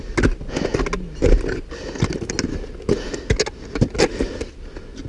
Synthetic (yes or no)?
no